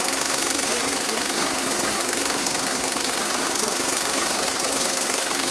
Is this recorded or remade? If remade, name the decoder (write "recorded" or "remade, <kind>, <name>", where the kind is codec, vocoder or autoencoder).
remade, codec, SNAC